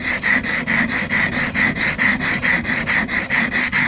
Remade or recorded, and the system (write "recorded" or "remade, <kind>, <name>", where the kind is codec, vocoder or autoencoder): recorded